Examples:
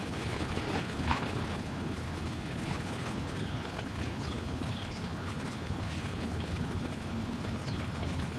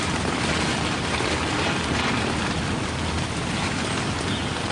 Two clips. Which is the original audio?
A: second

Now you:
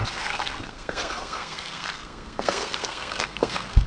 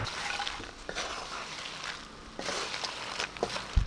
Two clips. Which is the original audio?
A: second